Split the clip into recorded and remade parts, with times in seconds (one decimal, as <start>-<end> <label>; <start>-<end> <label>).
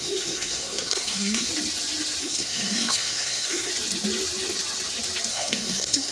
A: 0.0-1.5 remade; 1.5-2.2 recorded; 2.2-3.7 remade; 3.7-5.3 recorded; 5.3-6.1 remade